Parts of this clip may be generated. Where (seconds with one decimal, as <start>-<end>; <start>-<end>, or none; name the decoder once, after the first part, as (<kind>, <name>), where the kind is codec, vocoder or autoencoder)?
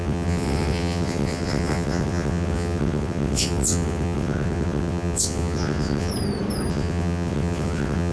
0.0-6.1 (vocoder, WaveNeXt); 6.7-8.1